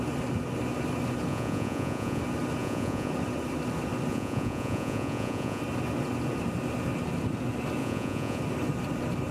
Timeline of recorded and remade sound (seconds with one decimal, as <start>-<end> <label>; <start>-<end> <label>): 0.0-1.3 recorded; 1.3-2.2 remade; 2.2-2.6 recorded; 2.6-3.1 remade; 3.1-4.1 recorded; 4.1-5.6 remade; 5.6-7.8 recorded; 7.8-8.4 remade; 8.4-9.3 recorded

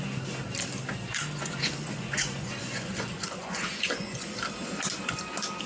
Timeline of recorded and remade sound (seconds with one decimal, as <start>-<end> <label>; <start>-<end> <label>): 0.0-1.4 recorded; 1.4-4.4 remade; 4.4-5.7 recorded

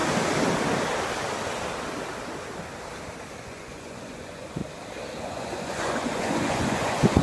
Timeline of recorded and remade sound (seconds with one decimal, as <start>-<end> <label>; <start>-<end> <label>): 0.0-3.4 recorded; 3.4-4.6 remade; 4.6-5.2 recorded; 5.2-7.2 remade

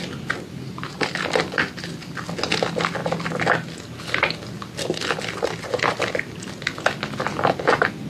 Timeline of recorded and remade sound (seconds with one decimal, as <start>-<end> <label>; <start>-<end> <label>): 0.0-8.1 recorded

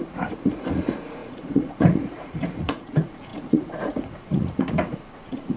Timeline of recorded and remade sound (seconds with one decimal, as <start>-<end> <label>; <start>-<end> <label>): 0.0-5.6 remade

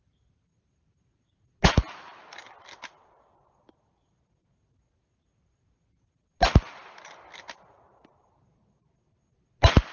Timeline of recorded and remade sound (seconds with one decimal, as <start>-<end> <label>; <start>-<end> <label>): 0.0-9.9 recorded